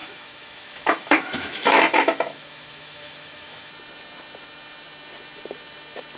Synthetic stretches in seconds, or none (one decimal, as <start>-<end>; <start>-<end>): 0.0-3.7